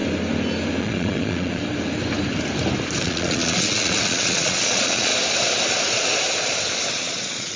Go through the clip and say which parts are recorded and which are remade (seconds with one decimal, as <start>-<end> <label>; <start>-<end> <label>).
0.0-0.8 recorded; 0.8-1.6 remade; 1.6-3.0 recorded; 3.0-5.1 remade; 5.1-6.9 recorded; 6.9-7.6 remade